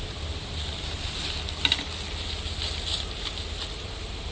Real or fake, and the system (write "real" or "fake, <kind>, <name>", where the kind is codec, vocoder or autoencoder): real